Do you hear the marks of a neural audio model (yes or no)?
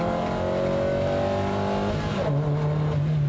no